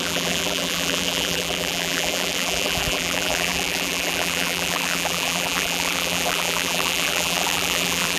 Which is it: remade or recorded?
remade